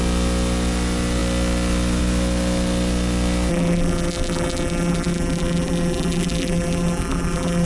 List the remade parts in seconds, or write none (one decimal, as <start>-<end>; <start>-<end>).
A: 3.5-7.7